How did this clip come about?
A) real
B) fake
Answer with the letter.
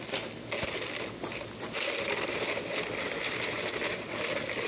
A